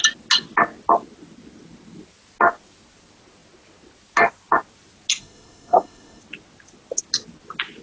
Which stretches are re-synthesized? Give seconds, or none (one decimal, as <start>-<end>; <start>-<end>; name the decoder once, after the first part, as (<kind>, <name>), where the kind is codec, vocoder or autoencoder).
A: 5.2-6.2 (codec, SNAC)

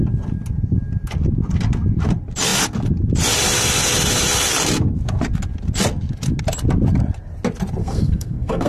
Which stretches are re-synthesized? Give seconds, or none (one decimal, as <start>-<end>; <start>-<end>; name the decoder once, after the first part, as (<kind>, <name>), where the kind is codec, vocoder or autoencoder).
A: 7.8-8.7 (codec, SNAC)

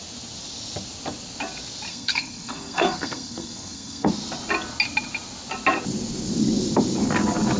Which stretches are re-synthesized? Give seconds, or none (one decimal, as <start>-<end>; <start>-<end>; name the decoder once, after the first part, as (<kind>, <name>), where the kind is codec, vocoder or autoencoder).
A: 1.9-4.1 (codec, SNAC)

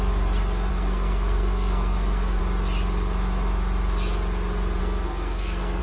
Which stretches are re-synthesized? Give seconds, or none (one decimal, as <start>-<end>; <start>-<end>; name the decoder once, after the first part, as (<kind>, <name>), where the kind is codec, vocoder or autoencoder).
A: 0.7-2.4 (codec, SNAC); 4.8-5.8

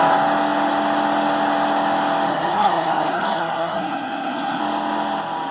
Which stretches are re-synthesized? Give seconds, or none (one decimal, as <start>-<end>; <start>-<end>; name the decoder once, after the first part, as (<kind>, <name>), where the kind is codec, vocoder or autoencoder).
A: 2.3-4.6 (codec, SNAC)